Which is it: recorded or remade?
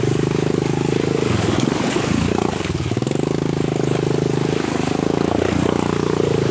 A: remade